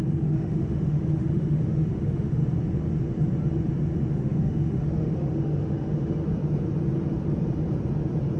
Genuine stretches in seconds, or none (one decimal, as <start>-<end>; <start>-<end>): 2.4-4.1; 6.2-8.4